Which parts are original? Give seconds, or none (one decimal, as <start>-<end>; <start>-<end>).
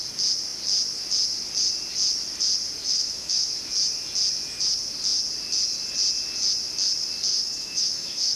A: 0.0-2.8; 3.5-7.3